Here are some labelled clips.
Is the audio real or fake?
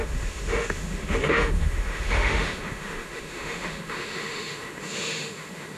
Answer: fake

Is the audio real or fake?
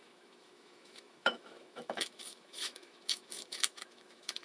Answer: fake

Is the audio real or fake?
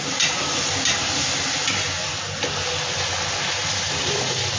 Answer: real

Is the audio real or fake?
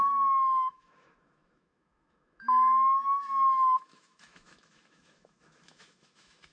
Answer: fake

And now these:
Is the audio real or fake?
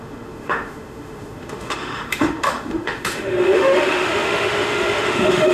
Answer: fake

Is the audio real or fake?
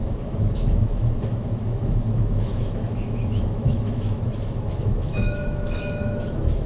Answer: fake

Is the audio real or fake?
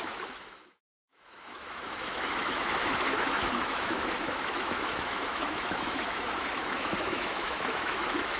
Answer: fake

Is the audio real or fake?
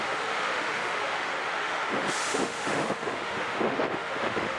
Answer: fake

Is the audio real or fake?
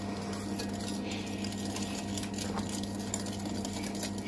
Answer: real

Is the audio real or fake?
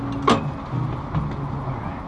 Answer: real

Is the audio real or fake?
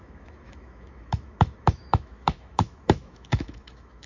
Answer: fake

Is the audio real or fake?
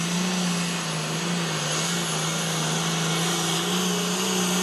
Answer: real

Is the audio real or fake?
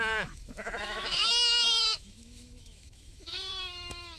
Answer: fake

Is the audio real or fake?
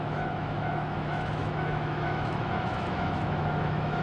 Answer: fake